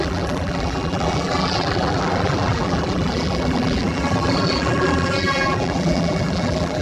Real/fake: fake